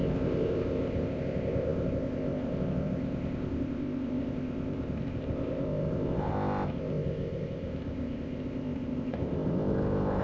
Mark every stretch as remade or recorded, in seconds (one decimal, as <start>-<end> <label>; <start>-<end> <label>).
0.0-10.2 remade